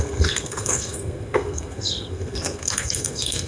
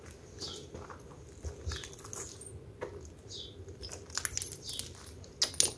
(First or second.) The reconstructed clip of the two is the first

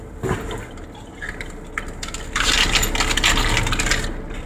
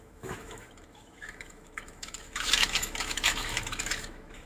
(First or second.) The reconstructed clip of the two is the second